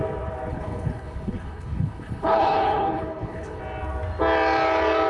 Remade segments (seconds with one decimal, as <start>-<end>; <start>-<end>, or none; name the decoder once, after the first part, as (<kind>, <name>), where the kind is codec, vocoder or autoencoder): 0.5-3.6 (codec, HILCodec)